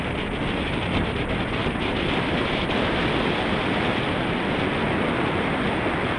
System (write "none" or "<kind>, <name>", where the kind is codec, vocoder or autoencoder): none